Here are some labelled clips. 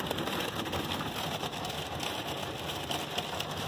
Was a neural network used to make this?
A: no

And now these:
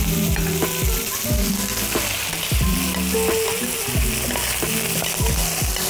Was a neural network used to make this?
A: no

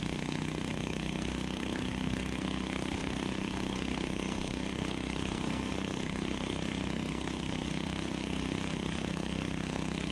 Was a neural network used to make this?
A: yes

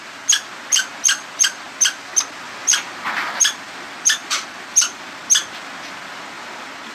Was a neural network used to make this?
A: no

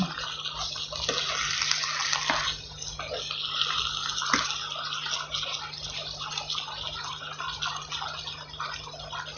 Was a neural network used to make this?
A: no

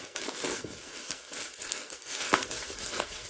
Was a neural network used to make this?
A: yes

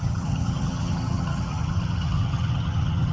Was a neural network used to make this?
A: yes